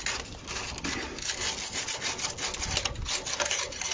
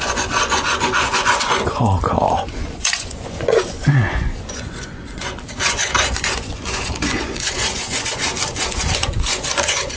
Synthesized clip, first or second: second